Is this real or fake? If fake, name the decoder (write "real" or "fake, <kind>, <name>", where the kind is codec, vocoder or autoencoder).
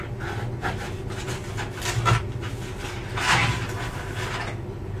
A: real